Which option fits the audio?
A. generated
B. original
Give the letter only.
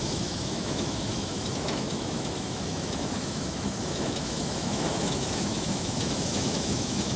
A